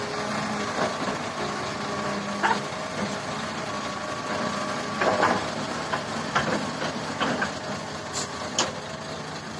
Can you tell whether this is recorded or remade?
recorded